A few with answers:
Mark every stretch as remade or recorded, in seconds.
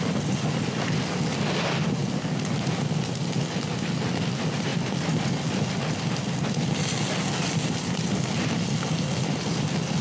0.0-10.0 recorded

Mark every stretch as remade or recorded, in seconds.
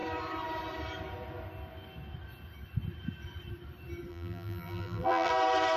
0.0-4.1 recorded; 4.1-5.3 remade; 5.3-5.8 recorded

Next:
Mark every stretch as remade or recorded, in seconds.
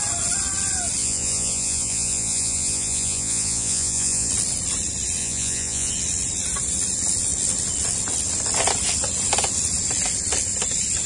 0.0-1.0 recorded; 1.0-4.3 remade; 4.3-5.2 recorded; 5.2-5.9 remade; 5.9-11.1 recorded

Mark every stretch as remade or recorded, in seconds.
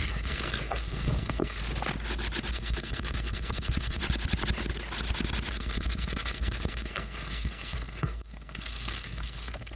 0.0-1.6 remade; 1.6-2.5 recorded; 2.5-4.0 remade; 4.0-5.5 recorded; 5.5-9.8 remade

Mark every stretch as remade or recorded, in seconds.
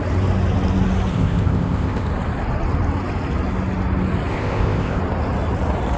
0.0-1.1 recorded; 1.1-2.1 remade; 2.1-4.3 recorded; 4.3-5.0 remade; 5.0-6.0 recorded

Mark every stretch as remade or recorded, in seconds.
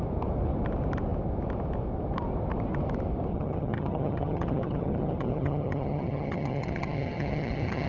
0.0-3.3 recorded; 3.3-7.9 remade